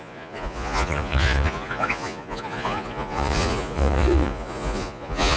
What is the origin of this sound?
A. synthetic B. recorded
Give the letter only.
A